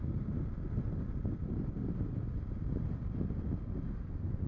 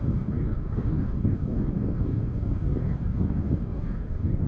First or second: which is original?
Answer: first